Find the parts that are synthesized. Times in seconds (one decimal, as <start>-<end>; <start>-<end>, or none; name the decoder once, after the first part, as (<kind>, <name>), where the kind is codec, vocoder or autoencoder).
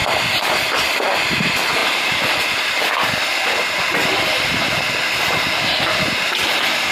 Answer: none